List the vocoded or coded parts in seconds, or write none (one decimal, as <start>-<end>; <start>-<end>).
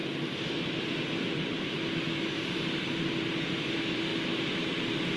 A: none